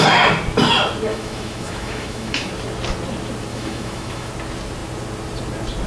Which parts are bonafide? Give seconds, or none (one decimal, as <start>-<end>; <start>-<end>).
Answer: 0.0-1.1; 2.5-3.5; 4.3-5.9